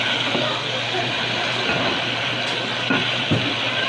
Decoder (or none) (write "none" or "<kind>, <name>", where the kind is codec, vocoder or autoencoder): none